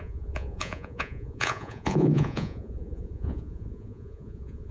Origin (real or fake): fake